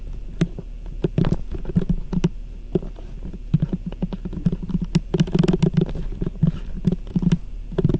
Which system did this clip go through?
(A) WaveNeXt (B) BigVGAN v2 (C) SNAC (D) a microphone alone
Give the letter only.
D